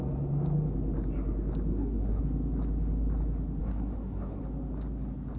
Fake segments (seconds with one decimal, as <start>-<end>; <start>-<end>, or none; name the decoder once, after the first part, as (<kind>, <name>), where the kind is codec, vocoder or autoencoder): 1.7-2.2 (codec, SNAC); 3.6-4.4